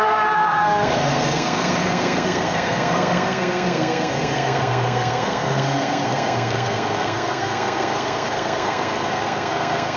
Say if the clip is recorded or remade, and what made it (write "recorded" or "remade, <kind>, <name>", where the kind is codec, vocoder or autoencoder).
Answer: remade, codec, SNAC